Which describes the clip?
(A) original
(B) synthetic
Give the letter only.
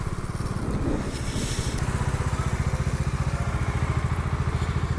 A